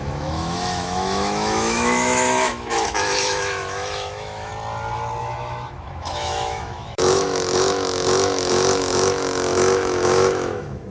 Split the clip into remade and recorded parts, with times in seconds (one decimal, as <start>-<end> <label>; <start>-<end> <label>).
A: 0.0-4.5 remade; 4.5-5.2 recorded; 5.2-10.9 remade